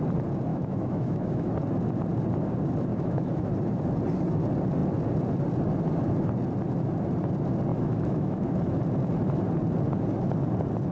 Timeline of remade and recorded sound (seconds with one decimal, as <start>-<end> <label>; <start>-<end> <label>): 0.0-0.5 recorded; 0.5-1.5 remade; 1.5-2.9 recorded; 2.9-3.5 remade; 3.5-7.7 recorded; 7.7-8.8 remade; 8.8-10.9 recorded